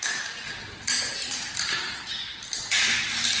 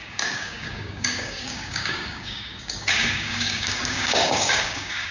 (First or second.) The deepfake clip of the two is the second